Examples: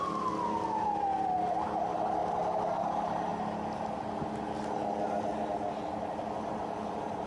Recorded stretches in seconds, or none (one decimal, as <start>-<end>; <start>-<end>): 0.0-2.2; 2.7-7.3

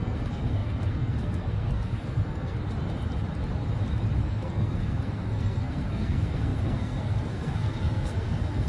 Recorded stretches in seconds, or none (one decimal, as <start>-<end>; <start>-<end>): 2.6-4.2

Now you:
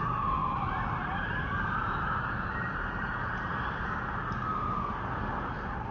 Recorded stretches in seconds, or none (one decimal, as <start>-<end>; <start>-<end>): 0.0-0.4; 3.9-5.9